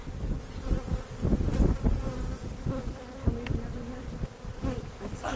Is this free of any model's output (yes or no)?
yes